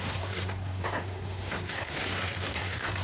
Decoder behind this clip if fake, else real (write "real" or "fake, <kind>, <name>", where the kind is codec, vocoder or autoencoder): fake, codec, SNAC